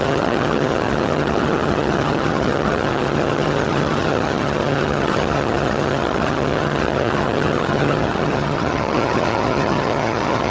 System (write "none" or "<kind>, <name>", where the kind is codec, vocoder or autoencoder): vocoder, HiFi-GAN